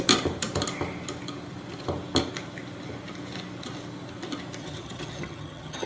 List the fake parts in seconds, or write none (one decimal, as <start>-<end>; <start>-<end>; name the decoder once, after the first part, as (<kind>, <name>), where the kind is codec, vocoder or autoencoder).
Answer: 4.6-5.9 (vocoder, HiFi-GAN)

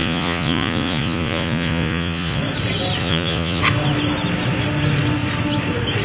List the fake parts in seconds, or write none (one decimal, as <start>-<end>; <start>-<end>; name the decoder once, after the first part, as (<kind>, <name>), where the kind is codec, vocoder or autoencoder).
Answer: 0.0-2.4 (vocoder, Vocos); 3.0-3.6

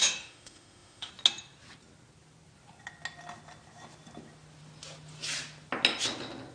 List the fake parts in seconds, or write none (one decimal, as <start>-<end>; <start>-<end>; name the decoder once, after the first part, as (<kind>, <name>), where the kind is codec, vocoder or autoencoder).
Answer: 0.0-1.1 (autoencoder, DAC-VAE)

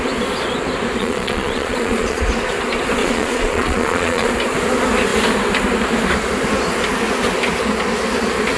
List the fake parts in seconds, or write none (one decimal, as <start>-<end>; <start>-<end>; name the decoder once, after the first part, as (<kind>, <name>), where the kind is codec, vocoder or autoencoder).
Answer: 1.0-2.2 (vocoder, Vocos); 3.0-4.3

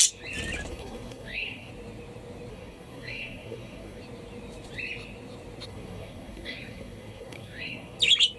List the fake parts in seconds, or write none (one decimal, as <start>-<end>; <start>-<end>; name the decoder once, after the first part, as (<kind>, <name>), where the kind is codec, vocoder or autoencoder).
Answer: 0.7-1.7 (codec, SNAC); 2.5-4.0; 5.7-8.0

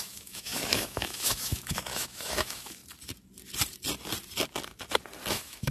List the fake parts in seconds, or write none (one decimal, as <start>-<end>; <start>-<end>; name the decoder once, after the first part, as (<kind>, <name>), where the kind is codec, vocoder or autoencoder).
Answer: 0.0-2.8 (autoencoder, DAC-VAE); 5.3-5.7

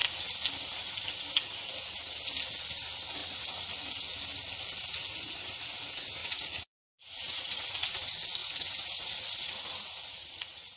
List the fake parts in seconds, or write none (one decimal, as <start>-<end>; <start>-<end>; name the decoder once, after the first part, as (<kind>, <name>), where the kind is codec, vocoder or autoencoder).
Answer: 3.2-3.9 (vocoder, Vocos); 6.2-7.7; 8.4-10.8